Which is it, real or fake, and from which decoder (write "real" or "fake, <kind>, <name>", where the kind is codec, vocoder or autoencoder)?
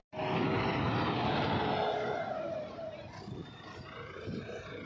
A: real